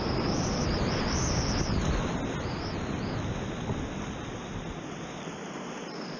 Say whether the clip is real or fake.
real